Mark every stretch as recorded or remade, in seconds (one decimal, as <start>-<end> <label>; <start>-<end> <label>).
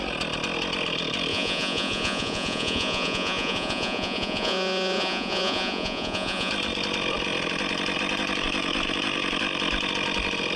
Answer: 0.0-1.3 recorded; 1.3-6.5 remade; 6.5-10.6 recorded